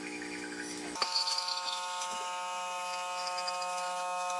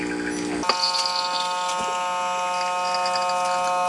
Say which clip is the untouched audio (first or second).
second